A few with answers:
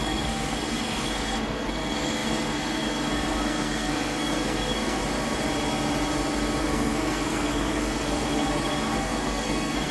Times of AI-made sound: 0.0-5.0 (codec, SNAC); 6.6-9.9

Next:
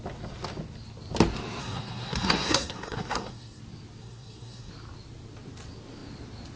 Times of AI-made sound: 1.6-3.6 (codec, SNAC); 4.0-4.7

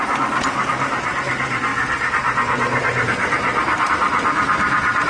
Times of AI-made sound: none